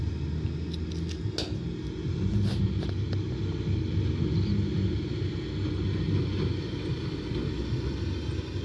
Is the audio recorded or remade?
recorded